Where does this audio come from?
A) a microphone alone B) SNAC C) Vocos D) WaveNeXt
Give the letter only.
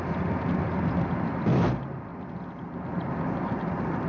A